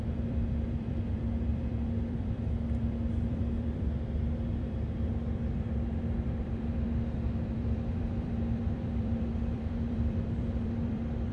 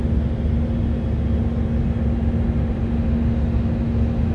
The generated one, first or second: first